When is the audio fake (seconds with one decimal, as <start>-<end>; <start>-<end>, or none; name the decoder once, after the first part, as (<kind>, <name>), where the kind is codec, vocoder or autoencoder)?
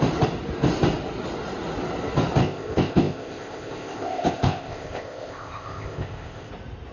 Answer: 2.4-6.5 (codec, ZipCodec)